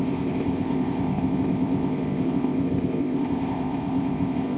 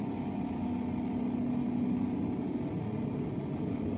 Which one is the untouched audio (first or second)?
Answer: second